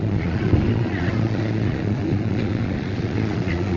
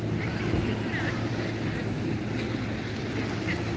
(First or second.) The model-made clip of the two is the first